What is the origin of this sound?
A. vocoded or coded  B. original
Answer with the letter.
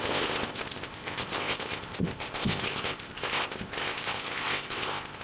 A